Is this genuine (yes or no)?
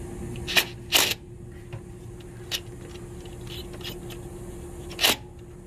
yes